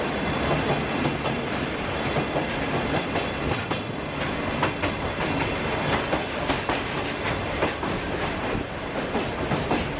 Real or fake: real